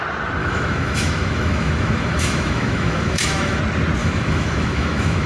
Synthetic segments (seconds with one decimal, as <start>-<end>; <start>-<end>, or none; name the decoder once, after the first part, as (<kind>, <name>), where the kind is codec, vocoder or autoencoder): 0.4-3.6 (autoencoder, DAC-VAE); 4.0-5.3